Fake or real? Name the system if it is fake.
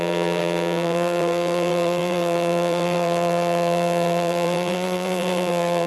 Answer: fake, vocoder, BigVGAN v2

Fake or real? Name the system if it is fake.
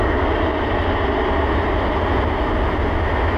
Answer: real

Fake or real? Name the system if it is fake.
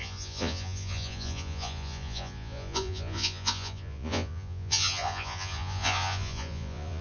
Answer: fake, vocoder, Vocos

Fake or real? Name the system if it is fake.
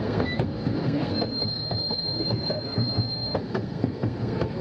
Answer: fake, codec, SNAC